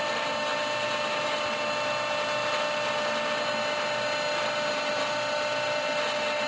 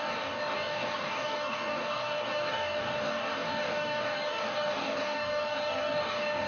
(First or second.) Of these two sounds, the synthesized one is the second